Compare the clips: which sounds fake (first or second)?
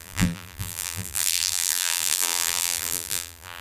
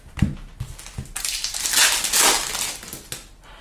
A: first